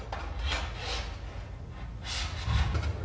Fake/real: real